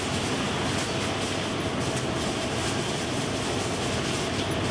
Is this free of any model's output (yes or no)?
yes